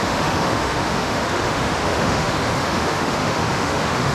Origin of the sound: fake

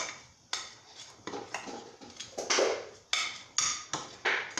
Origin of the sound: real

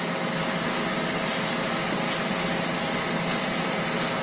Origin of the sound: real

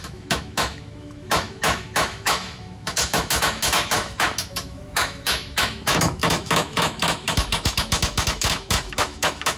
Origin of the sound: fake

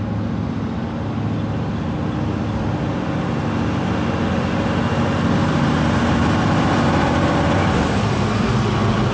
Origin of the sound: real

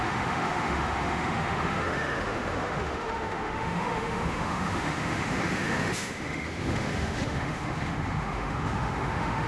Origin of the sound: fake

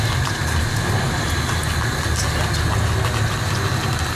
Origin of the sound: real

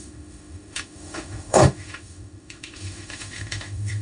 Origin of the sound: fake